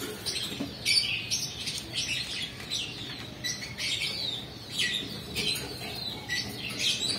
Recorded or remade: recorded